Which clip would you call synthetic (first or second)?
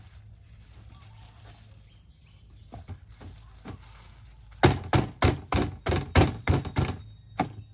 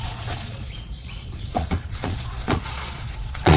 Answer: second